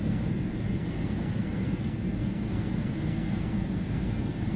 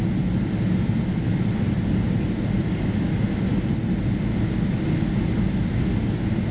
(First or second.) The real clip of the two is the second